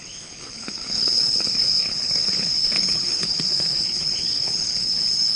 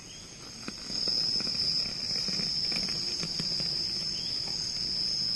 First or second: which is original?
second